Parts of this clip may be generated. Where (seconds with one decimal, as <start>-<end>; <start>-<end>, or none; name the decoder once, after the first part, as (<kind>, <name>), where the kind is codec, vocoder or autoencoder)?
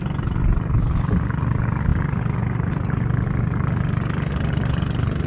none